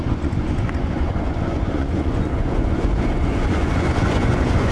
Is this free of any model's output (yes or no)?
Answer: no